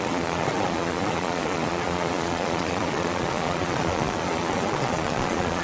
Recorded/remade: remade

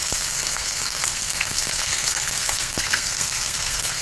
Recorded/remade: remade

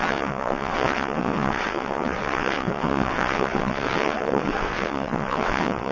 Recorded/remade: remade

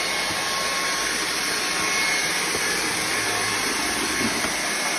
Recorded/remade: recorded